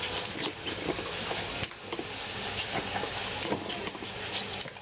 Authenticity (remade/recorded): recorded